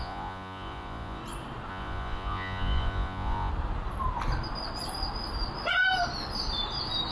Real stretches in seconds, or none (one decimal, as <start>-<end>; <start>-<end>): 1.2-1.7; 3.5-7.1